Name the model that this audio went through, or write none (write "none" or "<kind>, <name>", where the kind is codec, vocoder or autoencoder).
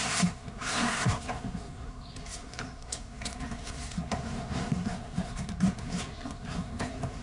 codec, SNAC